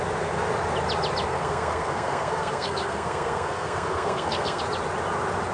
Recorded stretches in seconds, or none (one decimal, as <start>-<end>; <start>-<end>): 0.0-1.3; 4.6-5.5